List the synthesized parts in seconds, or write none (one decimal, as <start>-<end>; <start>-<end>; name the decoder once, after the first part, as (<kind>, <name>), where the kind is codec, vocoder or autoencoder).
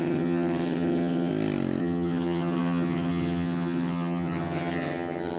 0.0-1.3 (vocoder, HiFi-GAN); 1.8-5.4